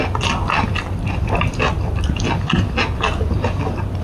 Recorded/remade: recorded